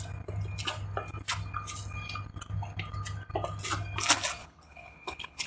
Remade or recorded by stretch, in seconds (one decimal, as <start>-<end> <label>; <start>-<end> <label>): 0.0-4.4 recorded; 4.4-5.5 remade